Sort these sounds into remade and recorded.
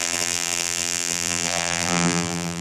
remade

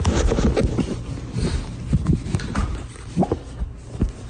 recorded